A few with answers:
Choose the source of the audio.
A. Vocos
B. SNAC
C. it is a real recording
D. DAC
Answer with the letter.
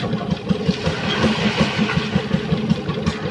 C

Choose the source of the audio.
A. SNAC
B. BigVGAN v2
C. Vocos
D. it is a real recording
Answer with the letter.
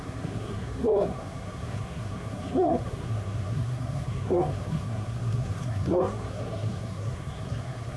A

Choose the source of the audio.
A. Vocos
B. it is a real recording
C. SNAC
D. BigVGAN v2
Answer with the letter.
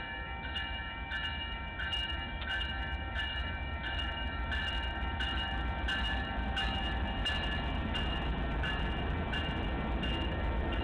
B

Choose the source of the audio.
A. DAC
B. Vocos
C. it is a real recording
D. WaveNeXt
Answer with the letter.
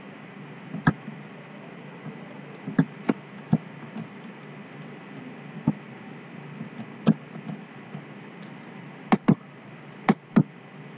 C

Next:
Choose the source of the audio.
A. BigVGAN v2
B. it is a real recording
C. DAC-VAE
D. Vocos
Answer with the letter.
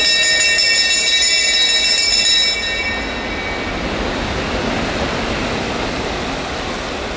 B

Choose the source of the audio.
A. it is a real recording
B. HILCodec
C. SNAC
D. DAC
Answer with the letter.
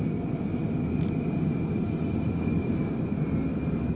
A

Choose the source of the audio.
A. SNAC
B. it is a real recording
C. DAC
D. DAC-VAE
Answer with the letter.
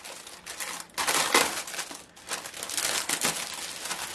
B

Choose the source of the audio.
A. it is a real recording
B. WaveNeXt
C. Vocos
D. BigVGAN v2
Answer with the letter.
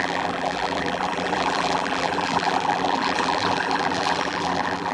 D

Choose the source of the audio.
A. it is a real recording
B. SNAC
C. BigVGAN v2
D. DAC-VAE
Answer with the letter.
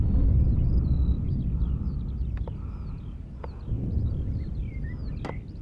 A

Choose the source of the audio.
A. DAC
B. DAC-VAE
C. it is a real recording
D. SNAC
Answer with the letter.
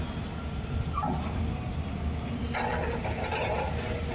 C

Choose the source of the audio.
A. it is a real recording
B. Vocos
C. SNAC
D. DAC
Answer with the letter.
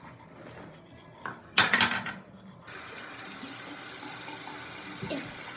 A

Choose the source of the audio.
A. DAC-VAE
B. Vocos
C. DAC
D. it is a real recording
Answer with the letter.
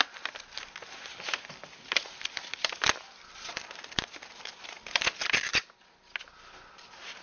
D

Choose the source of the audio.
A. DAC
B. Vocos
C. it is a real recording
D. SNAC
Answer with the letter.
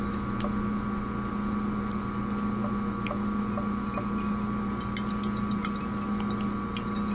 C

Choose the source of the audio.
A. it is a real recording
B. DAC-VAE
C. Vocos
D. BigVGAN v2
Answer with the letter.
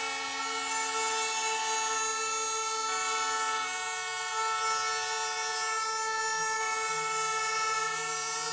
A